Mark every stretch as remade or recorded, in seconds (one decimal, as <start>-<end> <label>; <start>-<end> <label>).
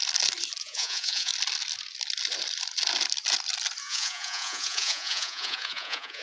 0.0-0.6 recorded; 0.6-1.3 remade; 1.3-3.8 recorded; 3.8-6.2 remade